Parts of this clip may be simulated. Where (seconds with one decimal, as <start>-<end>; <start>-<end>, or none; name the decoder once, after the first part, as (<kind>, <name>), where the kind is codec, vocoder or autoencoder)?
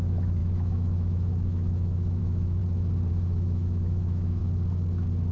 0.0-2.6 (autoencoder, DAC-VAE); 3.1-4.4